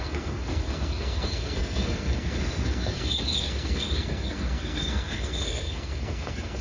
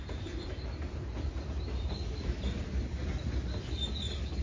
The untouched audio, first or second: second